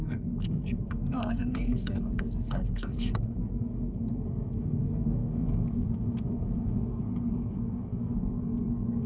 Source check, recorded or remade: remade